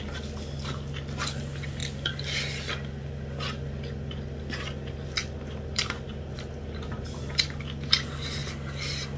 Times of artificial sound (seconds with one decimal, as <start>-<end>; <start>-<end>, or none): 0.0-8.4